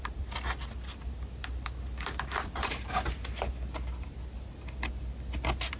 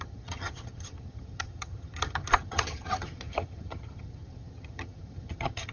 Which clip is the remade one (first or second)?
second